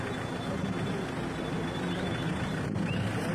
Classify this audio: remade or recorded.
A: recorded